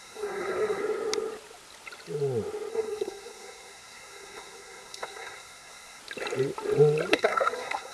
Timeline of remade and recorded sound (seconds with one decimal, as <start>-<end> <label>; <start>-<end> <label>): 0.0-0.8 remade; 0.8-2.7 recorded; 2.7-6.0 remade; 6.0-7.1 recorded; 7.1-7.9 remade